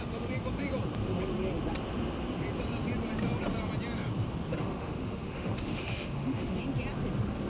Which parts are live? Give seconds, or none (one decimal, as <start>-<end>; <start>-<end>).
0.0-4.6; 6.6-7.5